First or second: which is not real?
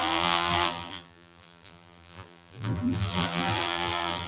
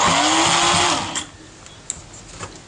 first